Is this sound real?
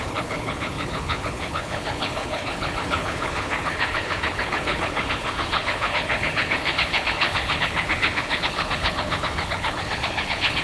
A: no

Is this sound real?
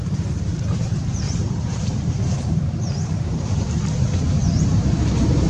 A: no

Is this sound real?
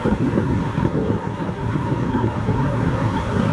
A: no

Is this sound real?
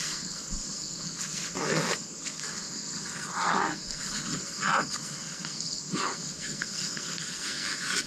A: no